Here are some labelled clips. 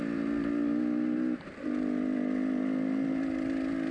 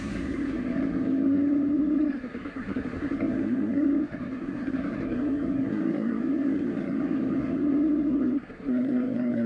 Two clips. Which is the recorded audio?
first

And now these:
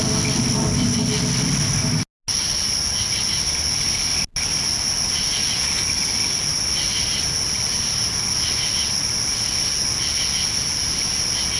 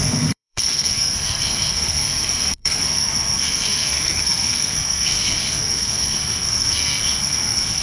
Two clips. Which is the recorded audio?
first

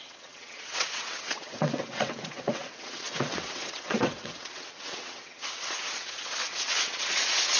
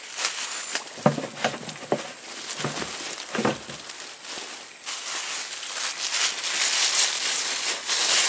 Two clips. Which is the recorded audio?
second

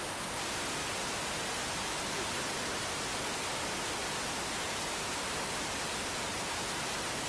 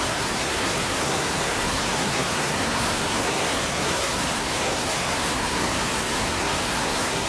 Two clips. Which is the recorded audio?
first